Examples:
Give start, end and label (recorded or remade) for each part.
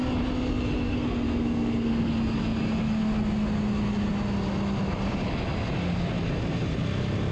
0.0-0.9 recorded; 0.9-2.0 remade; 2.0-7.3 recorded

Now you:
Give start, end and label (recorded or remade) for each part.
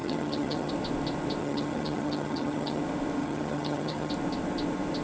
0.0-0.7 remade; 0.7-1.4 recorded; 1.4-2.8 remade; 2.8-3.2 recorded; 3.2-4.1 remade; 4.1-5.0 recorded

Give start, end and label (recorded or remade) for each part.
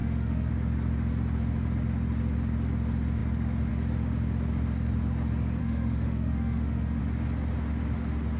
0.0-0.5 remade; 0.5-5.6 recorded; 5.6-7.0 remade; 7.0-8.4 recorded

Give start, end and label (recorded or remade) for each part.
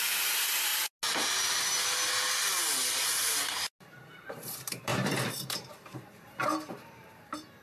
0.0-0.7 remade; 0.7-4.3 recorded; 4.3-7.6 remade